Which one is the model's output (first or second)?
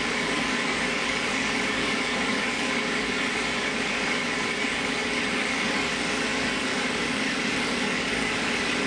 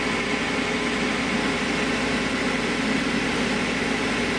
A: first